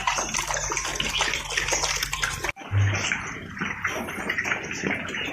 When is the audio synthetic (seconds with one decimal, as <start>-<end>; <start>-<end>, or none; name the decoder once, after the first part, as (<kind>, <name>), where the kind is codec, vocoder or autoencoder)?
none